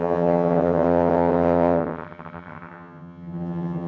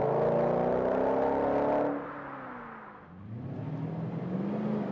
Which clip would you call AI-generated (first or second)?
first